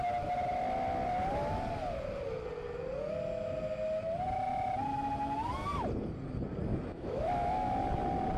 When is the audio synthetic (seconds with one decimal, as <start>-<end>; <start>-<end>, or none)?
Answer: 6.7-7.8